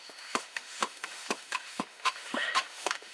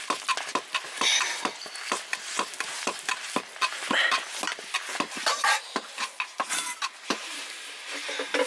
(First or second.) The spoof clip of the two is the first